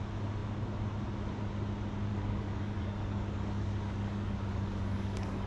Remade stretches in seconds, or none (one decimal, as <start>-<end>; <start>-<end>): 2.1-5.5